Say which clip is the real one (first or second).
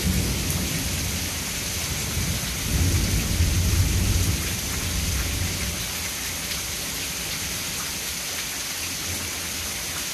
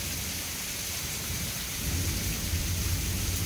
first